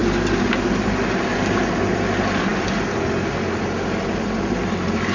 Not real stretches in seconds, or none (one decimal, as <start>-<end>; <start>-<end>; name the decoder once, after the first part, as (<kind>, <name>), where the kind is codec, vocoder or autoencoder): none